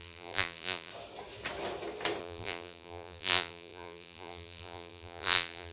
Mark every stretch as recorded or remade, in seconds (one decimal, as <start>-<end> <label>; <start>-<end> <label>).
0.0-0.9 remade; 0.9-2.2 recorded; 2.2-5.7 remade